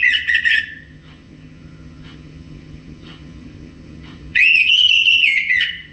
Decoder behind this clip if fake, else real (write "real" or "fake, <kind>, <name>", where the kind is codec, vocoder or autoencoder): fake, vocoder, HiFi-GAN